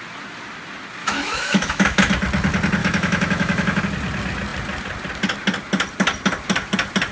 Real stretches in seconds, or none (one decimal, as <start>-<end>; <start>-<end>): 0.0-1.0; 2.1-2.8; 3.8-7.1